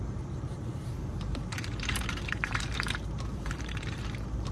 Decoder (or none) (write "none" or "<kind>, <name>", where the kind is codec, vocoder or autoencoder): vocoder, BigVGAN v2